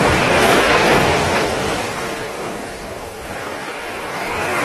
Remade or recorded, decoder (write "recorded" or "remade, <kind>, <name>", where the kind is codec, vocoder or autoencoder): remade, codec, DAC